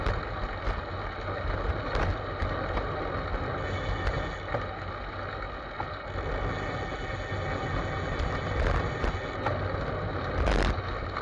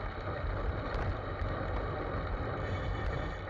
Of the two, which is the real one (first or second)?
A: first